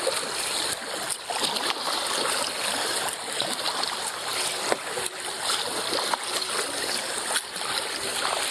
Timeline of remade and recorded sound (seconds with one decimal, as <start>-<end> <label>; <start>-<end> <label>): 0.0-8.5 recorded